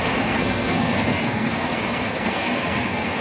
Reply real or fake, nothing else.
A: fake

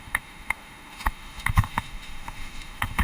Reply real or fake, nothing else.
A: fake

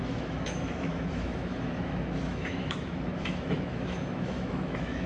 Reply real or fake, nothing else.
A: fake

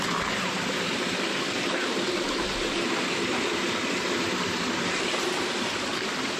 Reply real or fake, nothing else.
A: real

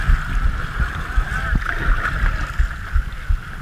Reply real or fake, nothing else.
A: real